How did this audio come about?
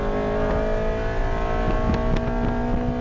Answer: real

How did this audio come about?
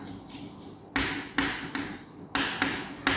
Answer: real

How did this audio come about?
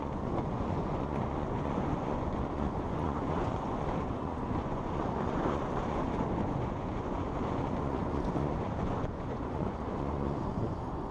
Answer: fake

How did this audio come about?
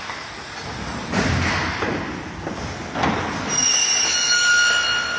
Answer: real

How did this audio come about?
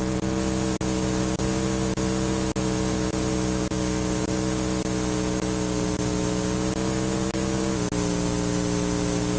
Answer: real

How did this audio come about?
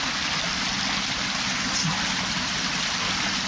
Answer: real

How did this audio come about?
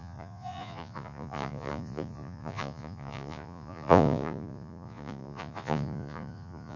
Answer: fake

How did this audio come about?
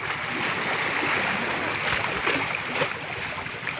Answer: real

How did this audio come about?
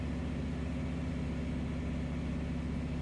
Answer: real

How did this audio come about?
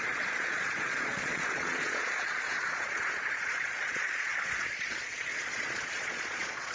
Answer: fake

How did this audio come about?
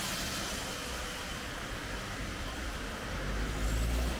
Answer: real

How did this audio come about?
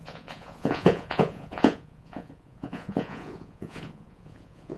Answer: fake